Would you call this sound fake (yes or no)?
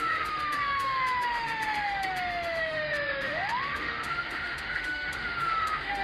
yes